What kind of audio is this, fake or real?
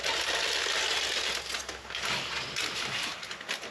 real